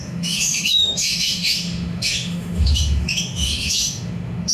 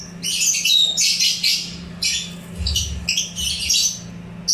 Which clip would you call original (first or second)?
second